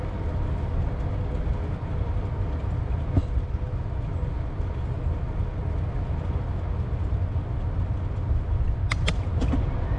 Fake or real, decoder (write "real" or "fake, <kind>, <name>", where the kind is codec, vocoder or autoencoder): real